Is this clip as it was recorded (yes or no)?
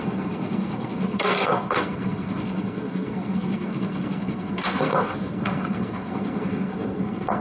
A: no